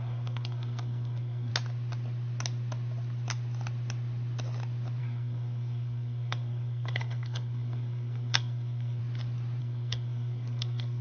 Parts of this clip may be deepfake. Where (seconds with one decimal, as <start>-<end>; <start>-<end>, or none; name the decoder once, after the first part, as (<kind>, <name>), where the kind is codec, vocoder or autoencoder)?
0.0-1.5 (codec, SNAC); 5.0-9.0; 9.6-11.0